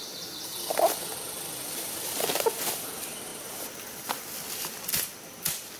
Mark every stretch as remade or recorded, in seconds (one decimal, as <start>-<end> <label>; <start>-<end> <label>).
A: 0.0-5.8 recorded